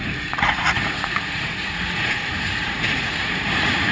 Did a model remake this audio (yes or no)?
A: yes